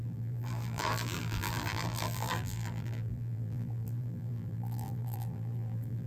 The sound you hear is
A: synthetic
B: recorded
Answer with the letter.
A